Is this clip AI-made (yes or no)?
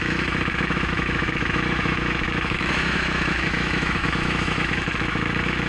yes